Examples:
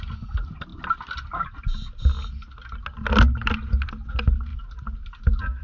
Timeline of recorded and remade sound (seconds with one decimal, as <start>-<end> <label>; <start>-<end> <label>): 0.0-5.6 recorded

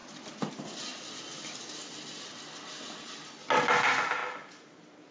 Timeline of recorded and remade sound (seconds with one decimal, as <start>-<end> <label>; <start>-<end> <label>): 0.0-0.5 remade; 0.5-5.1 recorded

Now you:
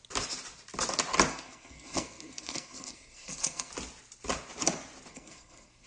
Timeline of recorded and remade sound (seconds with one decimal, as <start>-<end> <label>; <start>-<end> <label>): 0.0-1.3 recorded; 1.3-3.7 remade; 3.7-5.1 recorded; 5.1-5.9 remade

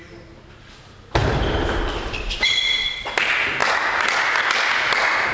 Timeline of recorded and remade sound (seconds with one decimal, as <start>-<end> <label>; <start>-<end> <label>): 0.0-1.2 recorded; 1.2-2.6 remade; 2.6-3.6 recorded; 3.6-4.1 remade; 4.1-5.3 recorded

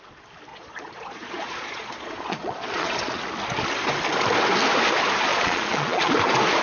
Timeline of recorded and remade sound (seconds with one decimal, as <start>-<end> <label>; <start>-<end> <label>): 0.0-0.5 recorded; 0.5-3.2 remade; 3.2-5.3 recorded; 5.3-6.1 remade; 6.1-6.6 recorded